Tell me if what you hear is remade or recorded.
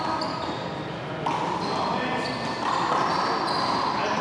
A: recorded